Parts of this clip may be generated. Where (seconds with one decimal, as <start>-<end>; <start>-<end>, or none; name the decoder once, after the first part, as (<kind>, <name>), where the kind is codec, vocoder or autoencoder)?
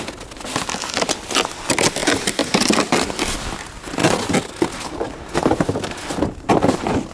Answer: none